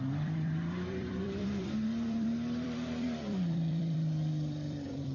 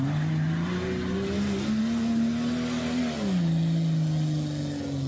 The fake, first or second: first